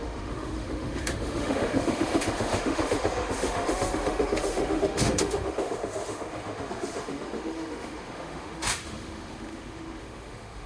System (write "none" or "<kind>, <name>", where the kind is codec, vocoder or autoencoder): autoencoder, DAC-VAE